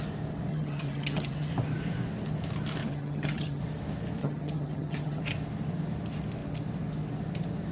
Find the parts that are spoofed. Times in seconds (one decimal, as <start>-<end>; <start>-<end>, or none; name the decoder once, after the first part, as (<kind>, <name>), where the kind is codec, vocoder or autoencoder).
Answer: 0.5-1.5 (vocoder, HiFi-GAN); 2.8-3.6; 4.2-5.2